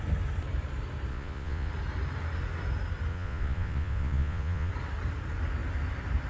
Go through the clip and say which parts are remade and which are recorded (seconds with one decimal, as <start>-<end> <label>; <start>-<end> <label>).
0.0-1.1 recorded; 1.1-1.7 remade; 1.7-3.1 recorded; 3.1-4.7 remade; 4.7-6.3 recorded